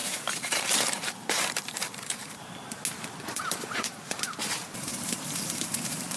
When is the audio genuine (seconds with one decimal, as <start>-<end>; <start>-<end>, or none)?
2.8-3.3